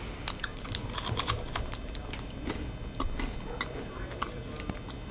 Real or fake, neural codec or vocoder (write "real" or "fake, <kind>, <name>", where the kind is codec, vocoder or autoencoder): real